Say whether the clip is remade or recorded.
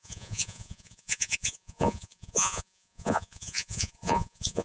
remade